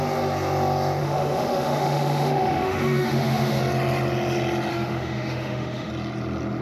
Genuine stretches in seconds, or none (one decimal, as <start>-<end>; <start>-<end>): 0.0-1.0; 3.6-4.7; 5.9-6.6

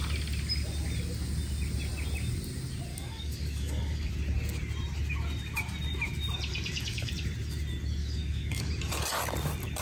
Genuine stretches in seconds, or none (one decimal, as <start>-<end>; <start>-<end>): 0.0-2.9; 4.1-6.5; 7.1-8.0; 8.7-9.8

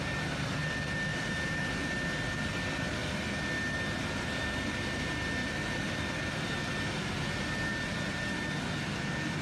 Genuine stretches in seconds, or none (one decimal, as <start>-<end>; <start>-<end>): 0.0-1.1; 1.9-5.4; 6.2-9.4

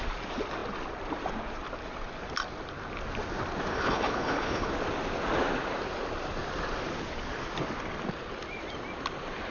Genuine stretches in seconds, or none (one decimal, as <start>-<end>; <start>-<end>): 0.0-3.7; 4.7-9.5

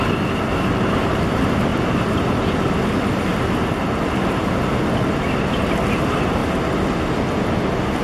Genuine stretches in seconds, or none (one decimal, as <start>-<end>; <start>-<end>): 0.0-0.5; 1.2-1.7; 2.4-8.0

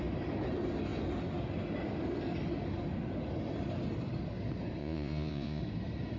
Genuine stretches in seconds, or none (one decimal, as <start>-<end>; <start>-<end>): 0.0-4.8; 5.6-6.2